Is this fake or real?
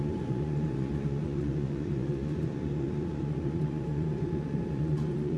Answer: fake